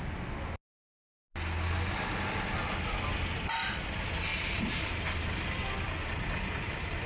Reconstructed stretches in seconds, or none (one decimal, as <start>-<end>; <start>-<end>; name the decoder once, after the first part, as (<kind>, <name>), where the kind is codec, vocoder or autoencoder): 4.3-6.6 (vocoder, BigVGAN v2)